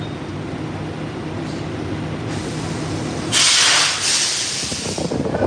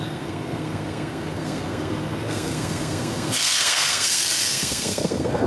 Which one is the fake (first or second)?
second